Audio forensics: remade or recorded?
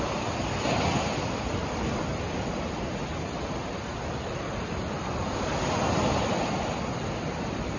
recorded